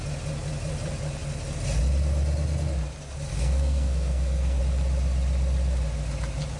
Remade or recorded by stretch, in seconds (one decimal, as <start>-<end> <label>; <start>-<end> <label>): 0.0-3.3 recorded; 3.3-4.6 remade; 4.6-6.6 recorded